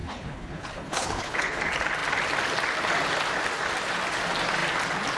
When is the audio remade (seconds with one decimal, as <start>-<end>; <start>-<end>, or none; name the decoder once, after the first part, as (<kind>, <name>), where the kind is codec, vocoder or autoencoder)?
0.0-1.6 (codec, HILCodec)